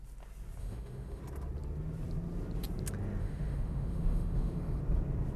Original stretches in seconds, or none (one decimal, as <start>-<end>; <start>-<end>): 0.0-0.6; 1.2-3.2; 4.8-5.4